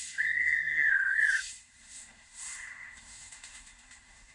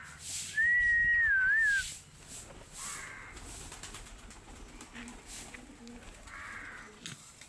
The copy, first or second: first